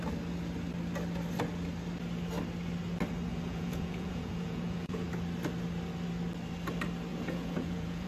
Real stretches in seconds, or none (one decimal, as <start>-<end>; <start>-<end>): 0.0-3.3; 5.1-7.1